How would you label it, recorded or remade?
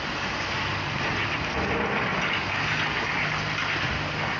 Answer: recorded